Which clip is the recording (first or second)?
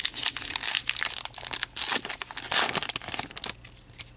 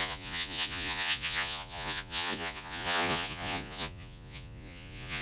first